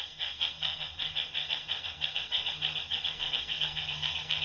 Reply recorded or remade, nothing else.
remade